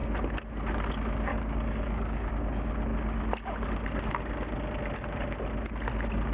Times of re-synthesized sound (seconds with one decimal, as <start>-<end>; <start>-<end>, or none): 1.3-2.3